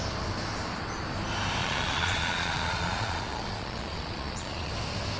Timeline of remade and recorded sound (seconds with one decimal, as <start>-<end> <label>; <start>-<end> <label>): 0.0-1.6 recorded; 1.6-4.7 remade; 4.7-5.2 recorded